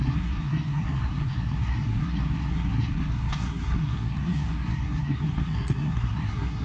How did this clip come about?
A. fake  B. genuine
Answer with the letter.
A